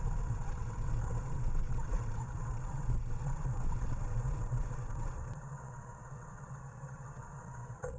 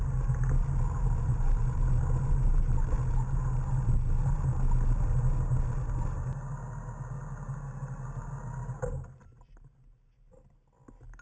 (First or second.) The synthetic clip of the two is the first